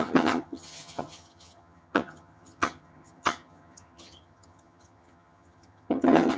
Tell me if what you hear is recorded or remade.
remade